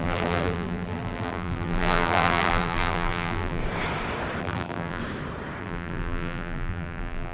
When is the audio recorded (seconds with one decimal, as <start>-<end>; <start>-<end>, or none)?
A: 3.6-4.4; 5.0-5.6